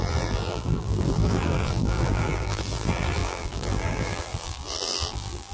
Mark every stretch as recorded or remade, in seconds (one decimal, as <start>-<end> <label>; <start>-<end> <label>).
0.0-5.5 remade